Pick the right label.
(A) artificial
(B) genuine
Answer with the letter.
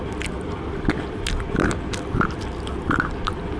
B